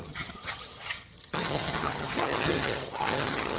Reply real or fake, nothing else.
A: fake